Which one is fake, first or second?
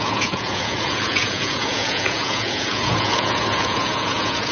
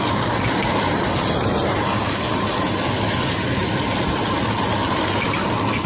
first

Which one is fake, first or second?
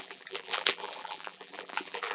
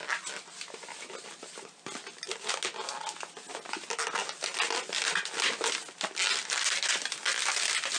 first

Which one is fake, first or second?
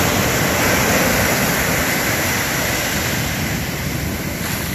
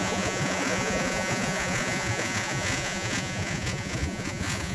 second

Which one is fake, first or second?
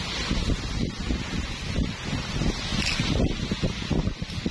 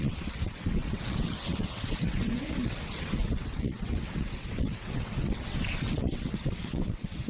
second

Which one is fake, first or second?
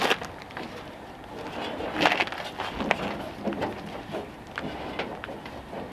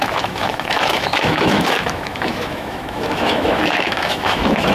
second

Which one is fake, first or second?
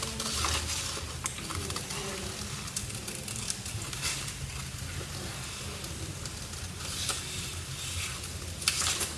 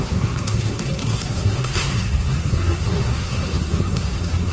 second